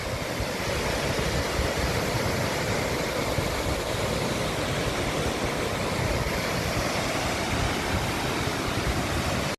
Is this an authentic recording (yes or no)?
yes